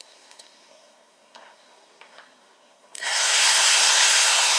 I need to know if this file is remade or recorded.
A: remade